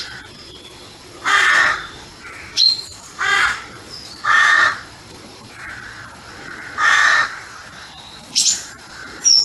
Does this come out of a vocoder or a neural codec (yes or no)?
yes